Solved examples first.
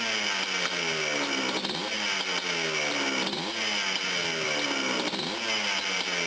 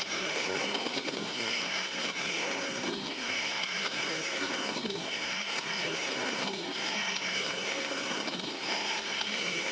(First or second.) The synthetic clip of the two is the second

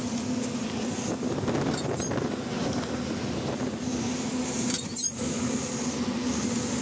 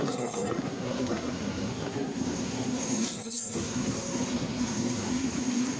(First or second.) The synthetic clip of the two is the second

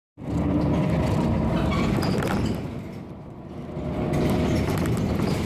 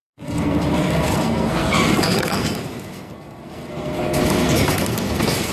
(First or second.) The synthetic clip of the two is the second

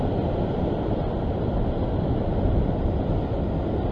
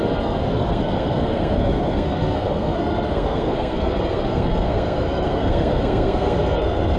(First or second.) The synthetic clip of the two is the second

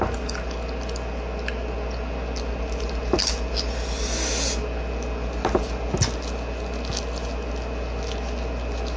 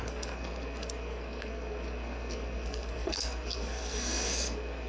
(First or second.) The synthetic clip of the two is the second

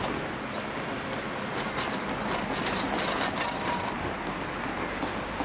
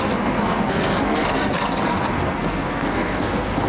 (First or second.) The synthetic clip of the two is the second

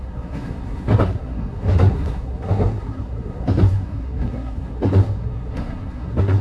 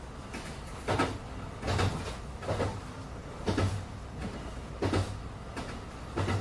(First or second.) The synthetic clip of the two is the first